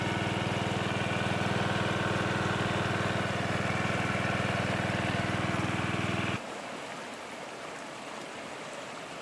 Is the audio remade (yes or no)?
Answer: no